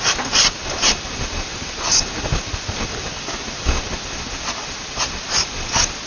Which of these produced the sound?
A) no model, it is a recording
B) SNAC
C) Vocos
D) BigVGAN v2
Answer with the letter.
A